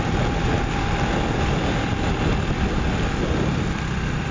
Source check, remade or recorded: recorded